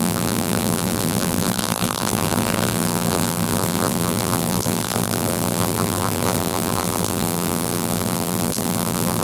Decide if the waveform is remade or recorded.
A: remade